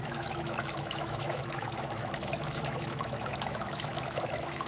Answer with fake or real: fake